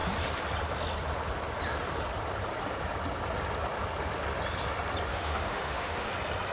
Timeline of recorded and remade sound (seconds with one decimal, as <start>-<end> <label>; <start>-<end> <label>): 0.0-5.1 recorded; 5.1-6.1 remade; 6.1-6.5 recorded

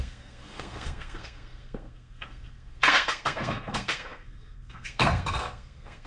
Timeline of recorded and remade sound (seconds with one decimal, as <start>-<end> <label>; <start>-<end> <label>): 0.0-6.1 remade

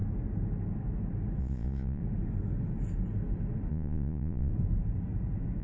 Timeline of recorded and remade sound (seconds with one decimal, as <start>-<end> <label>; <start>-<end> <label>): 0.0-1.4 recorded; 1.4-2.0 remade; 2.0-3.7 recorded; 3.7-4.5 remade; 4.5-5.6 recorded

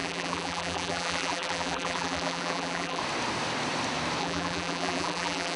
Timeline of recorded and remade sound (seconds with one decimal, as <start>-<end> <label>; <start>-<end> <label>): 0.0-3.0 remade; 3.0-4.2 recorded; 4.2-5.6 remade

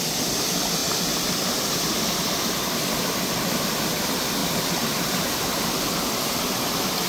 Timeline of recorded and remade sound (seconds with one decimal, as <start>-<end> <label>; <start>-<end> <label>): 0.0-0.8 recorded; 0.8-3.8 remade; 3.8-4.4 recorded; 4.4-7.1 remade

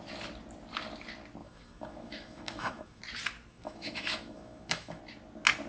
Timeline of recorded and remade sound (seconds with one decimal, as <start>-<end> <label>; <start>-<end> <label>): 0.0-1.4 recorded; 1.4-3.0 remade; 3.0-3.5 recorded; 3.5-5.0 remade; 5.0-5.7 recorded